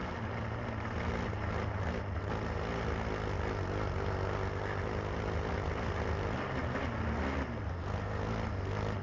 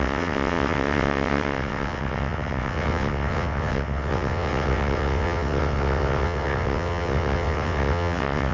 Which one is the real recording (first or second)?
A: first